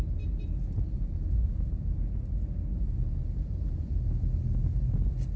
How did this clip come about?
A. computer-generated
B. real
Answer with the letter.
B